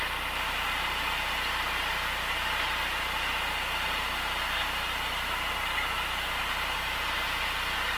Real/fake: real